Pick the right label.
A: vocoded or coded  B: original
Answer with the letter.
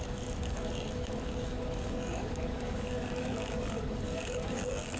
A